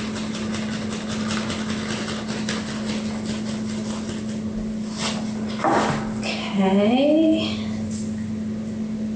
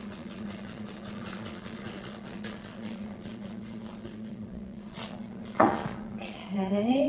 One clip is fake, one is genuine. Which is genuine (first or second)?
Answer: first